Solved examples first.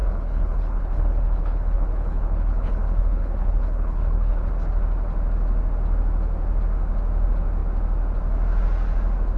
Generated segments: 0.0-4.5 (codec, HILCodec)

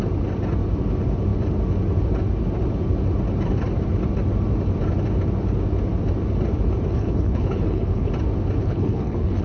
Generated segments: 6.9-8.1 (codec, HILCodec); 8.6-9.4

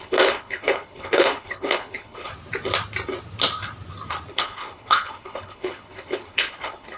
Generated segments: 0.0-2.3 (codec, HILCodec); 4.3-7.0

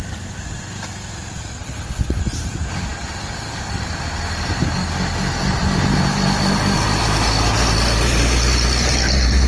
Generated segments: 1.6-2.2 (codec, HILCodec)

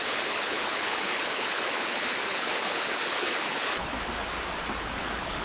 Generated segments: 0.0-3.9 (codec, HILCodec); 4.8-5.4

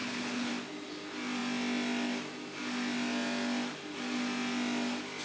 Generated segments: 0.0-0.5 (codec, HILCodec)